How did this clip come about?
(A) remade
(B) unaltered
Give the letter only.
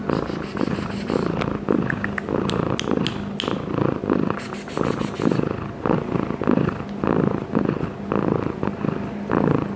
B